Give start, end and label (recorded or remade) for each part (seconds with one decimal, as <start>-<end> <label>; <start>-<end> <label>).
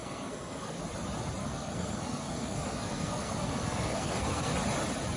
0.0-0.8 remade; 0.8-1.4 recorded; 1.4-4.5 remade; 4.5-5.2 recorded